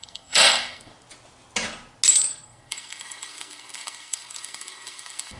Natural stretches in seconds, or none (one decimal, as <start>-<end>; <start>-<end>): 0.9-2.1